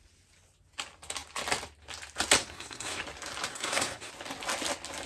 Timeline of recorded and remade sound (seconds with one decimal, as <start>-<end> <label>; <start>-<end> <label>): 0.0-2.4 recorded; 2.4-3.0 remade; 3.0-3.5 recorded; 3.5-4.1 remade; 4.1-5.1 recorded